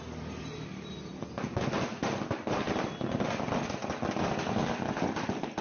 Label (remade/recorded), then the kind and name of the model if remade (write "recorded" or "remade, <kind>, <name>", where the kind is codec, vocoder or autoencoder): recorded